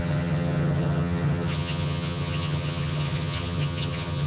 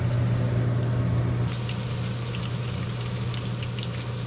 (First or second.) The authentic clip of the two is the second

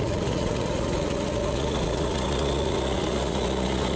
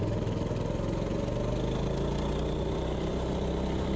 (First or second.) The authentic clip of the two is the second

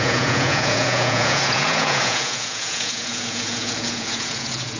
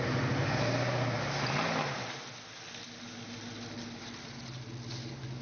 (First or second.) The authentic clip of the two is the second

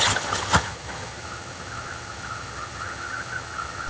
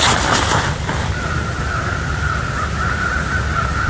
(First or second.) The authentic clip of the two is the second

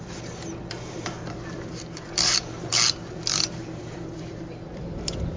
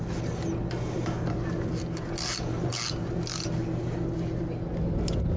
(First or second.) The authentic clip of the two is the second